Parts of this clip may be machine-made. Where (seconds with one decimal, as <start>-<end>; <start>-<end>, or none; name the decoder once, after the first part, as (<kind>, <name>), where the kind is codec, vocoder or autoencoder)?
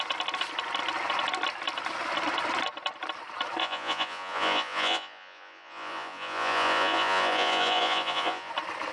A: 3.6-8.5 (vocoder, Vocos)